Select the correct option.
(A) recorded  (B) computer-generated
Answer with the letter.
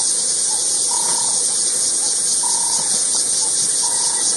B